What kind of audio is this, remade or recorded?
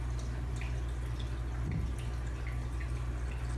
recorded